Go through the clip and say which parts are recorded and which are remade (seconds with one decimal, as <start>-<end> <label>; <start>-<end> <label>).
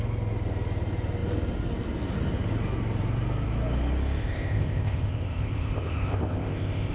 0.0-4.2 recorded; 4.2-6.9 remade